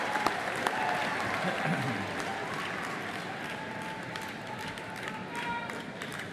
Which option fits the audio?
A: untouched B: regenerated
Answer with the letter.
A